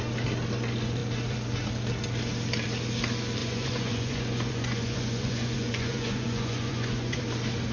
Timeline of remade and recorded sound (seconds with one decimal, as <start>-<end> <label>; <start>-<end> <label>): 0.0-3.4 recorded; 3.4-7.2 remade; 7.2-7.7 recorded